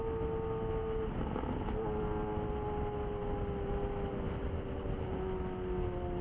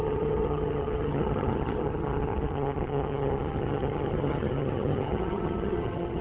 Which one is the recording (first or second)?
first